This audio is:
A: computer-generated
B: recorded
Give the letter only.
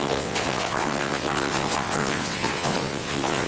A